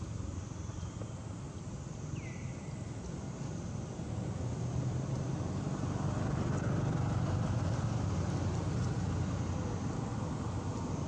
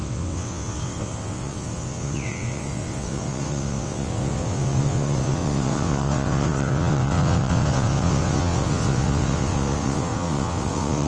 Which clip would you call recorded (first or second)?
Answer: first